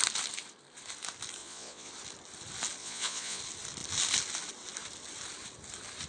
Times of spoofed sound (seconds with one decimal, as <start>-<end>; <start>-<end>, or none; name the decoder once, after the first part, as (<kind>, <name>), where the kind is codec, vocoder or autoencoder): 1.4-1.9 (vocoder, Vocos); 2.8-3.4